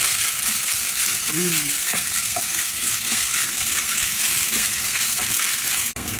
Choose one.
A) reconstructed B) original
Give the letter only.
A